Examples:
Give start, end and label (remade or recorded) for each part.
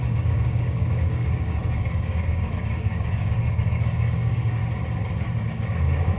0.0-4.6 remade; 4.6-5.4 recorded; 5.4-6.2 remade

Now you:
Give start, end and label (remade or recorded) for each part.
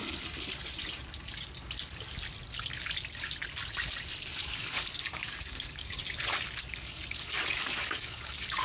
0.0-4.4 recorded; 4.4-6.0 remade; 6.0-6.7 recorded; 6.7-8.6 remade